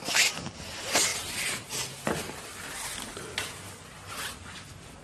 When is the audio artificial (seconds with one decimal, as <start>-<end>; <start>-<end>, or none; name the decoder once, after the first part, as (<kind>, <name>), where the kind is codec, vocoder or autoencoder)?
none

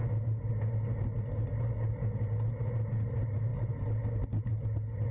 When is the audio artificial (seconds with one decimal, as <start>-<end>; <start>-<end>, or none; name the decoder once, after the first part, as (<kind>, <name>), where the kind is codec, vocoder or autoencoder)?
none